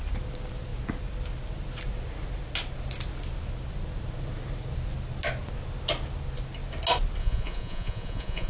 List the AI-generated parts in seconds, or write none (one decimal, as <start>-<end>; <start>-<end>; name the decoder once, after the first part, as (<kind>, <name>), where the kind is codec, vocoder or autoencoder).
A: 7.2-8.5 (vocoder, Vocos)